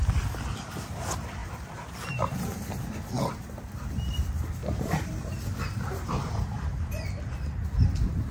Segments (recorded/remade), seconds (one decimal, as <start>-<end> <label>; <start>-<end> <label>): 0.0-1.4 recorded; 1.4-2.9 remade; 2.9-4.6 recorded; 4.6-6.1 remade; 6.1-8.3 recorded